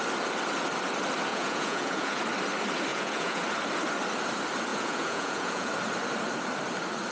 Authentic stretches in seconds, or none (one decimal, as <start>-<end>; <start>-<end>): 0.0-1.3; 2.2-2.9; 3.4-4.7; 5.7-7.1